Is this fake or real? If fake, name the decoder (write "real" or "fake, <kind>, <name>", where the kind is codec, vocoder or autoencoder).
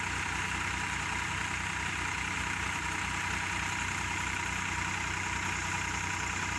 real